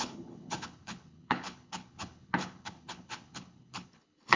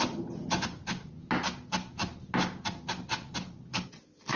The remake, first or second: first